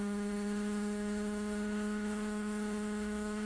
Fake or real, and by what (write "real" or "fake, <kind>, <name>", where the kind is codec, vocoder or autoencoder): fake, autoencoder, DAC-VAE